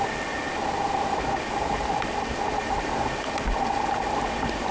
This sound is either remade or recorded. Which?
recorded